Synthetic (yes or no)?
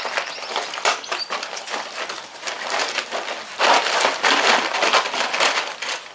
no